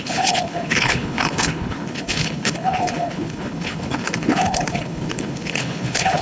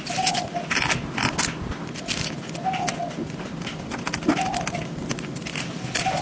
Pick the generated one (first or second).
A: first